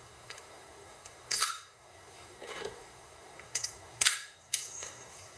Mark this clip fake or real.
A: fake